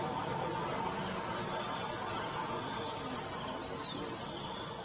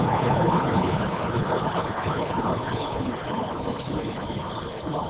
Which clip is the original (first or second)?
first